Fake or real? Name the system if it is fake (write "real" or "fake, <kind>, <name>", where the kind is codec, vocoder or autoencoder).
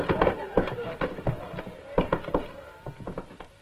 real